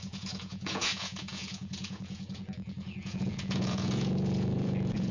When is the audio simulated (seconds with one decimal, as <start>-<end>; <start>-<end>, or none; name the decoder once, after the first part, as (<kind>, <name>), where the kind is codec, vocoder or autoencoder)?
0.0-5.1 (vocoder, Vocos)